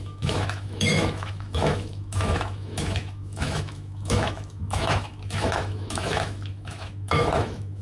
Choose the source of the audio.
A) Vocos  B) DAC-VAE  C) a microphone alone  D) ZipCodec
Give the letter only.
B